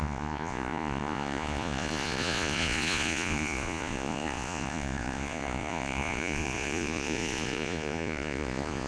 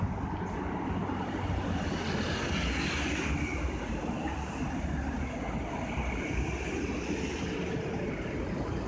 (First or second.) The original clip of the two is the second